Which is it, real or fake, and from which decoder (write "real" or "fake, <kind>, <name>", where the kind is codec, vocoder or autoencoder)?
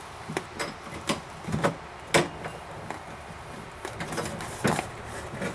real